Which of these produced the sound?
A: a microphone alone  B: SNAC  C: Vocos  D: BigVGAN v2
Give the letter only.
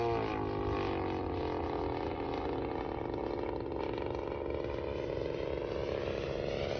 A